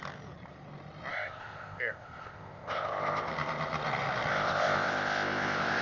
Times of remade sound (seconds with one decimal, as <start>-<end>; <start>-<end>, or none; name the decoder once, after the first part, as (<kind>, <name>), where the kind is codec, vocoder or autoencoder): 1.1-3.3 (codec, ZipCodec); 4.3-5.8